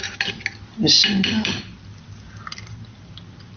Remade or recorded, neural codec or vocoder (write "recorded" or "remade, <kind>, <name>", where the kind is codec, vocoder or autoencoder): recorded